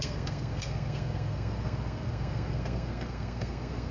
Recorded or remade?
remade